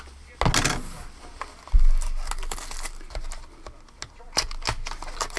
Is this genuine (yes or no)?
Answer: yes